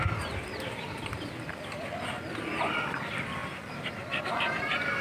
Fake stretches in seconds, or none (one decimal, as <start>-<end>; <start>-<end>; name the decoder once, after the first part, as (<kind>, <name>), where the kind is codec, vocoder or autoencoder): none